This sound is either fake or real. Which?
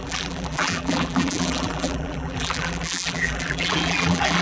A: fake